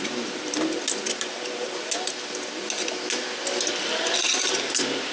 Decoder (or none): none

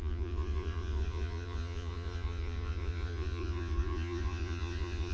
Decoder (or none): vocoder, Vocos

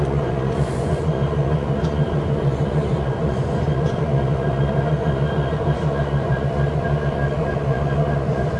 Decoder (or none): vocoder, Vocos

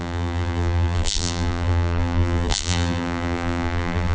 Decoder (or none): vocoder, BigVGAN v2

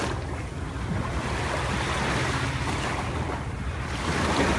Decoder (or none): none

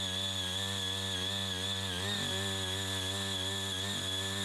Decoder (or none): none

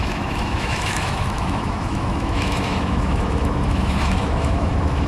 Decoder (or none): autoencoder, DAC-VAE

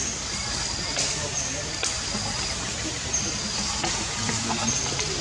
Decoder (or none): none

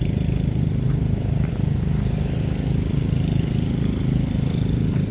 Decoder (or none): vocoder, BigVGAN v2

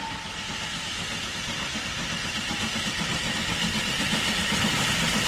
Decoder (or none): none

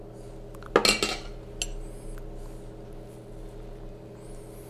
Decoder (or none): none